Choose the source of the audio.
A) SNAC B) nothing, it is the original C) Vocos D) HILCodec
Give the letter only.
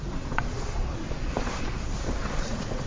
C